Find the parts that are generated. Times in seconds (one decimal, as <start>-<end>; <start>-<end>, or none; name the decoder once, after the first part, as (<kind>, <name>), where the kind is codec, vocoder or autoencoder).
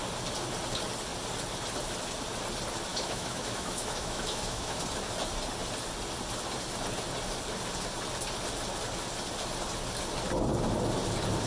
2.9-4.8 (autoencoder, DAC-VAE)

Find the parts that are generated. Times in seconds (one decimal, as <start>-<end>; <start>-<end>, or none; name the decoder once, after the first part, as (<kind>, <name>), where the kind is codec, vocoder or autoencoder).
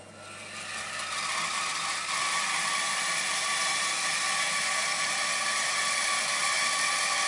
2.0-6.4 (vocoder, BigVGAN v2)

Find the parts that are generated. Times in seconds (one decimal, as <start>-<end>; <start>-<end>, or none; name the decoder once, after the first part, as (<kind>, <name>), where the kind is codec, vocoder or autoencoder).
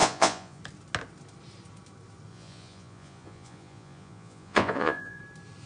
0.0-0.6 (vocoder, Vocos); 2.3-5.2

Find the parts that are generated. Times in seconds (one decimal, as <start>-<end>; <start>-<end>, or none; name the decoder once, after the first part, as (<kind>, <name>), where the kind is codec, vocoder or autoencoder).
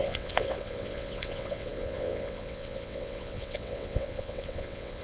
0.0-5.0 (vocoder, WaveNeXt)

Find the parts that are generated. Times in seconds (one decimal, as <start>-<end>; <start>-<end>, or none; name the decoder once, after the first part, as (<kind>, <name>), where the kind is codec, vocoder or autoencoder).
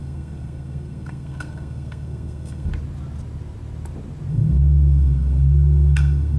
0.0-2.7 (codec, SNAC); 4.3-6.4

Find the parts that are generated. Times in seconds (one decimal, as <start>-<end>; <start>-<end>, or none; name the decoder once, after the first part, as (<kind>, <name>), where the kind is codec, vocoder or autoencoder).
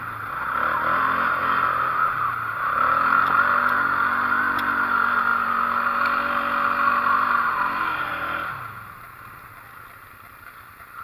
none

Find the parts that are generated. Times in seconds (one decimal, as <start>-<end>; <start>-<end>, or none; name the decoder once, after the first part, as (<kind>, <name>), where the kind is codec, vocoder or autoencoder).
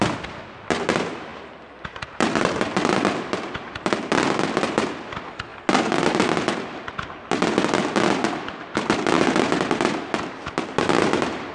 1.3-4.9 (vocoder, BigVGAN v2)